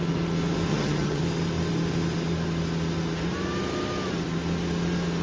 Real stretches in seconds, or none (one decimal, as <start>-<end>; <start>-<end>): 0.0-0.7; 1.2-5.2

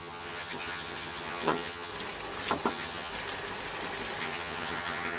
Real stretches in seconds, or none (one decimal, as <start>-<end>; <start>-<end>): 1.9-2.7; 3.1-4.2